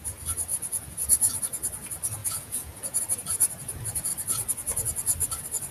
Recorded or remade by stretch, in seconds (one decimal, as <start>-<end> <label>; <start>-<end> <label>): 0.0-0.5 recorded; 0.5-1.4 remade; 1.4-2.2 recorded; 2.2-3.0 remade; 3.0-5.7 recorded